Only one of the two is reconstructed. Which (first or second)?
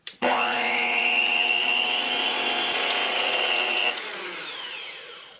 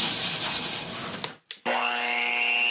first